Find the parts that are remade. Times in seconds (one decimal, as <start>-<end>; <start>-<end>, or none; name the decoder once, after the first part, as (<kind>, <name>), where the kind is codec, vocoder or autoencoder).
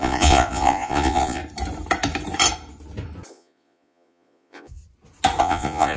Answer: 0.0-1.4 (vocoder, Vocos); 3.3-4.8; 5.4-6.0